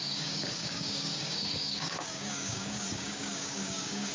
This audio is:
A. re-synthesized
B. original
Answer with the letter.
A